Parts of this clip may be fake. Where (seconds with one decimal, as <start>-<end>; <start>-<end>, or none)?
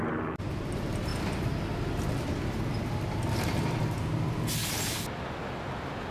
none